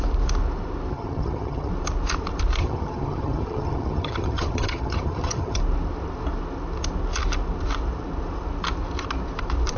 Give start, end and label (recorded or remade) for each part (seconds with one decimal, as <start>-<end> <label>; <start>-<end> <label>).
0.0-0.9 recorded; 0.9-1.7 remade; 1.7-2.6 recorded; 2.6-5.6 remade; 5.6-9.8 recorded